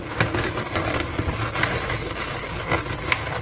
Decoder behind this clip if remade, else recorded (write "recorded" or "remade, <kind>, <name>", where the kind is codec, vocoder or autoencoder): recorded